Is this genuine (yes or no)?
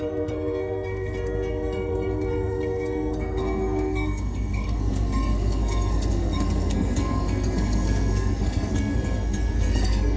no